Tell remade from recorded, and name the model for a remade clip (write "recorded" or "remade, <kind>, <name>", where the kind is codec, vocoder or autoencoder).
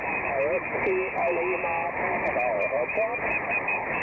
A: recorded